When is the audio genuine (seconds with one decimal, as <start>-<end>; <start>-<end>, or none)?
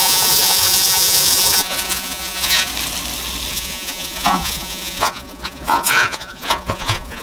2.7-3.5